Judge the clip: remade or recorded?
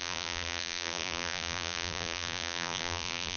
remade